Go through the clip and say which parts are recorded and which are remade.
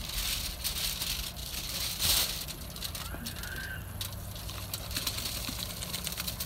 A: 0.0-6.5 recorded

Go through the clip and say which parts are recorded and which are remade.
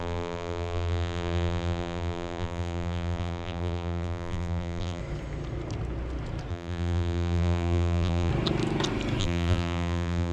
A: 0.0-5.0 remade; 5.0-6.5 recorded; 6.5-8.3 remade; 8.3-9.2 recorded; 9.2-10.3 remade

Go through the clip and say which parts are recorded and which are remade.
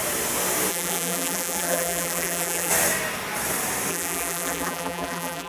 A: 0.0-0.7 recorded; 0.7-2.7 remade; 2.7-3.9 recorded; 3.9-5.5 remade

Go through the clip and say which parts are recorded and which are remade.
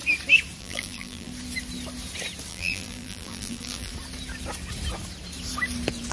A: 0.0-0.6 recorded; 0.6-1.3 remade; 1.3-2.5 recorded; 2.5-3.9 remade; 3.9-6.1 recorded